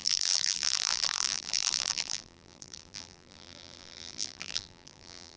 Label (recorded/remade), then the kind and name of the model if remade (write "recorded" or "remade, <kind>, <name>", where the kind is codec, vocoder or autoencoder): remade, vocoder, BigVGAN v2